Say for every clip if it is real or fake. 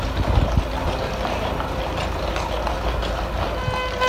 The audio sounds real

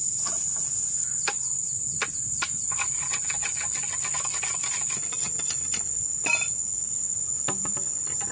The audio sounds real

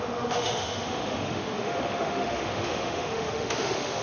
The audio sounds fake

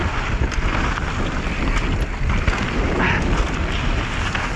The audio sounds real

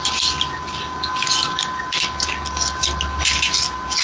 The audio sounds real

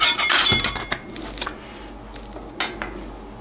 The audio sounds real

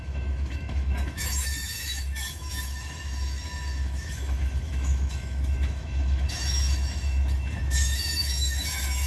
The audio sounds fake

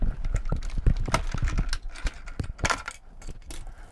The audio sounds real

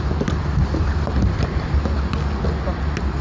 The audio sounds real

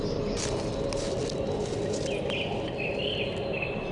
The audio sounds real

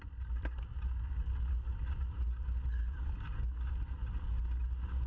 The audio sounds real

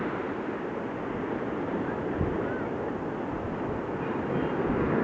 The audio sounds real